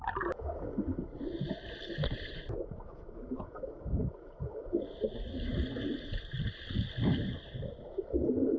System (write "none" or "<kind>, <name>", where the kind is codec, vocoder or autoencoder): none